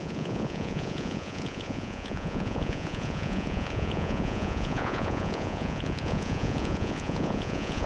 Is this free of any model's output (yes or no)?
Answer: no